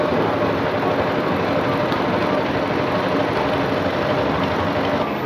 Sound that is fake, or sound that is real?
real